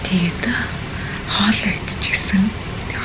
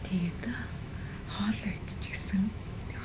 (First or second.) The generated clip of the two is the second